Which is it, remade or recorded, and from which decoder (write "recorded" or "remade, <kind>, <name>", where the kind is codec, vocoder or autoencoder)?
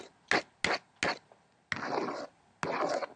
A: recorded